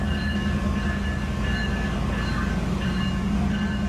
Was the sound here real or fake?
fake